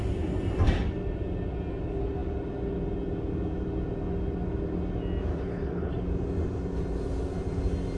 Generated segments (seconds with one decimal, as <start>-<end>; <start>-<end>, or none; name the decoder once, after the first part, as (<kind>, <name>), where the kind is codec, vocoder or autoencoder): 5.3-5.9 (codec, HILCodec)

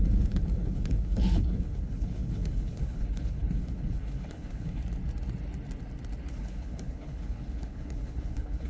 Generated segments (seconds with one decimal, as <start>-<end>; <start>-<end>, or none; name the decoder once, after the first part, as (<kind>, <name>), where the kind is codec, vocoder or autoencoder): 0.0-4.8 (codec, HILCodec); 6.3-8.7

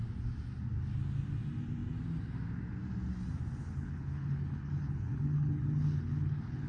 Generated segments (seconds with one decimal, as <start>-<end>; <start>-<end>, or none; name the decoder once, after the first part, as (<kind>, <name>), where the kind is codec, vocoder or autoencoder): 3.6-6.7 (codec, HILCodec)

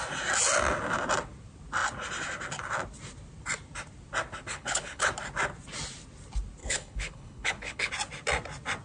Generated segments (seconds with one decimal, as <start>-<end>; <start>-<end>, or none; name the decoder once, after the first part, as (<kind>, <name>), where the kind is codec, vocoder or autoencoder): 4.5-5.1 (codec, HILCodec); 6.6-7.9

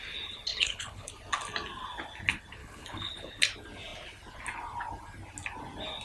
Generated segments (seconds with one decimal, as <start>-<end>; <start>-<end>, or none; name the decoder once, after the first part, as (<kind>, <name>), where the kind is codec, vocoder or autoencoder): 0.5-1.1 (codec, HILCodec); 2.6-3.4

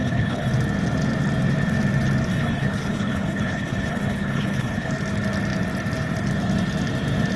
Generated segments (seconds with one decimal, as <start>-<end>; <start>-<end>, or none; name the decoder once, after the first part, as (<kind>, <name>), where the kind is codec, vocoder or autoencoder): 0.0-0.5 (codec, HILCodec); 2.3-4.9

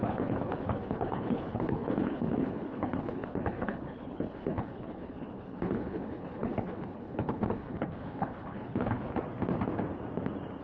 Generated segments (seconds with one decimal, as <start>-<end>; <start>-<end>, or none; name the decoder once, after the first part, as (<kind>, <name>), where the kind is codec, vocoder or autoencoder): 0.0-9.1 (codec, HILCodec)